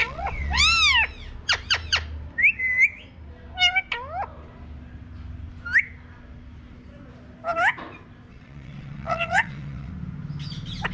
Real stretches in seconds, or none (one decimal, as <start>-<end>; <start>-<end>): 0.6-8.3; 9.9-10.9